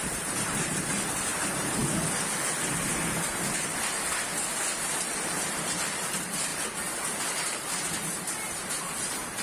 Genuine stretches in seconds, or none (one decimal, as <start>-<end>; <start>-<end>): 1.8-5.1; 6.5-7.2